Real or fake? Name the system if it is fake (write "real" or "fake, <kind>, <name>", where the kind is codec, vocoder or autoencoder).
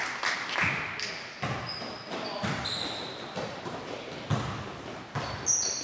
real